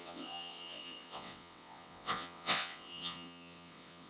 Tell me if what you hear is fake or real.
fake